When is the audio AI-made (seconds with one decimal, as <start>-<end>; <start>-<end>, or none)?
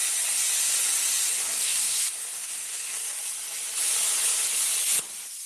1.4-3.2